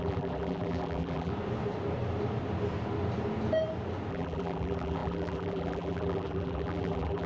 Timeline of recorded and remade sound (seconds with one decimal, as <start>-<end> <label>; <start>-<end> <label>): 0.0-1.3 remade; 1.3-4.1 recorded; 4.1-7.3 remade